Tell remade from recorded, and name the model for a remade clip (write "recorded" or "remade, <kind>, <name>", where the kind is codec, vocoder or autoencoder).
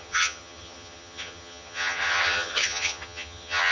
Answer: remade, vocoder, HiFi-GAN